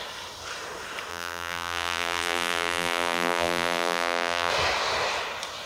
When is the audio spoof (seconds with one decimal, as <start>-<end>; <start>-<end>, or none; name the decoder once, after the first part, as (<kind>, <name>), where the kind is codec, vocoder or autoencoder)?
1.1-4.5 (vocoder, BigVGAN v2)